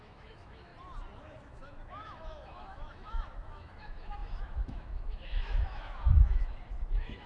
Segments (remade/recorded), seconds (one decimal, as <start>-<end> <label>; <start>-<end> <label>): 0.0-0.7 remade; 0.7-1.2 recorded; 1.2-7.3 remade